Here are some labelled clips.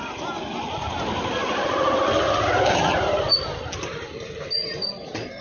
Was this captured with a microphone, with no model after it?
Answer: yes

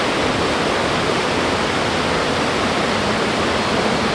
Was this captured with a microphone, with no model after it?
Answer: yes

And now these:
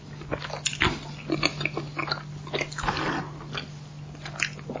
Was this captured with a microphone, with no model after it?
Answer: yes